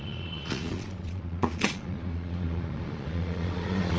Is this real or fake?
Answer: fake